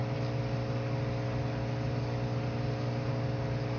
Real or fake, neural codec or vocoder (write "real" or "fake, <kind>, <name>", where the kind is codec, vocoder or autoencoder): real